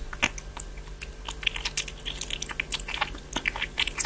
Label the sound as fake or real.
real